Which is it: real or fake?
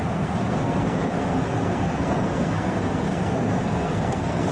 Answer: fake